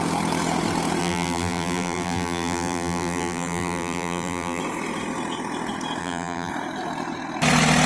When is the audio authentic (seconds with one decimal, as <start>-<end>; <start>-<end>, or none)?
0.0-1.0; 4.6-6.0; 6.5-7.9